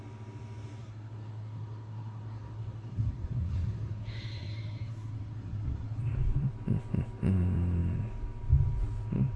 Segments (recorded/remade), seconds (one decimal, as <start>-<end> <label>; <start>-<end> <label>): 0.0-0.8 recorded; 0.8-6.0 remade; 6.0-9.4 recorded